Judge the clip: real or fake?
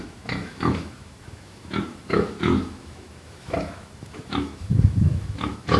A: fake